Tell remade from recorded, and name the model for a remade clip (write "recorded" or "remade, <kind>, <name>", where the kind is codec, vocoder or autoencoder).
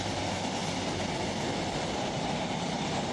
recorded